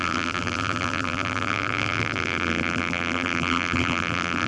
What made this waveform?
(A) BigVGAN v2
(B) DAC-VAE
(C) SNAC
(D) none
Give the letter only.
A